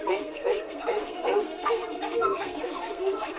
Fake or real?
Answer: fake